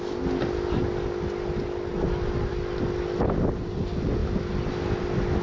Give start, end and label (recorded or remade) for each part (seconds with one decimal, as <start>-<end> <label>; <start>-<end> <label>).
0.0-5.4 recorded